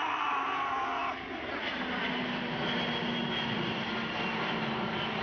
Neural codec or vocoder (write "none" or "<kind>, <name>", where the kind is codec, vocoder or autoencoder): none